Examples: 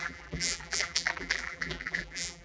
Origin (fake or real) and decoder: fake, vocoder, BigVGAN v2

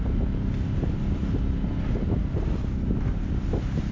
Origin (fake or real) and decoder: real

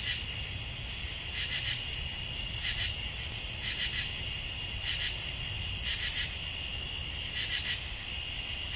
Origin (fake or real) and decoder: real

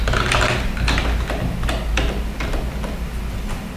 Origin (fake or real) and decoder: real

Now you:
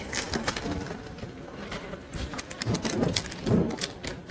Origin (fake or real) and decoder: real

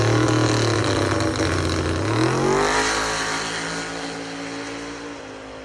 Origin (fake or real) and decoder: real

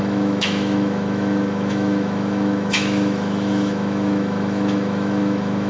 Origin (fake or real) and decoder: fake, autoencoder, DAC-VAE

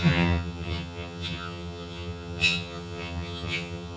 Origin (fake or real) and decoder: fake, vocoder, HiFi-GAN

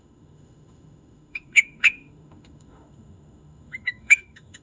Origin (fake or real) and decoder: fake, autoencoder, DAC-VAE